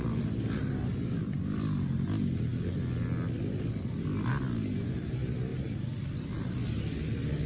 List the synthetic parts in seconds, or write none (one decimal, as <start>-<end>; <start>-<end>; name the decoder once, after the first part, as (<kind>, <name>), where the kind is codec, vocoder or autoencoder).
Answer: none